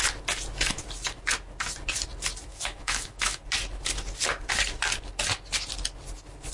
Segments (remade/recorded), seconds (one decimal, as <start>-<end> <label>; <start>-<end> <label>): 0.0-2.5 recorded; 2.5-3.4 remade; 3.4-6.5 recorded